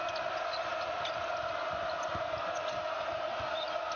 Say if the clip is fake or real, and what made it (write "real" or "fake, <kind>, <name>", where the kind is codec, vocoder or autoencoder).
real